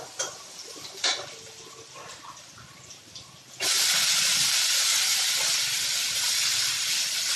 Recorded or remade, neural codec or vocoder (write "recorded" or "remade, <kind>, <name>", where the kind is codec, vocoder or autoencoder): recorded